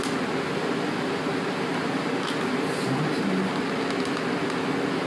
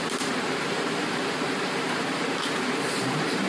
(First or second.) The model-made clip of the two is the second